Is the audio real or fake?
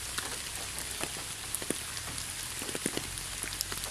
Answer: real